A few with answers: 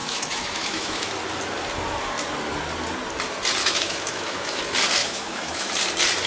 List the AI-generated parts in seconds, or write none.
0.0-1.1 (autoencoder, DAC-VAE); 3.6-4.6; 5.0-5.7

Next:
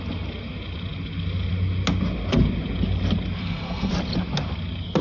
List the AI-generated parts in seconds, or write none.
3.4-3.9 (codec, SNAC)